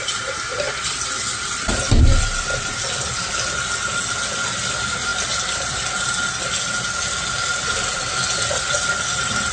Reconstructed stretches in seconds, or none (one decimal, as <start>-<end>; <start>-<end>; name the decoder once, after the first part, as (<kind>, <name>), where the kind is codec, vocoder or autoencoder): none